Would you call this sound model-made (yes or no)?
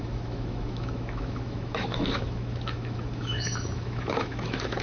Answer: yes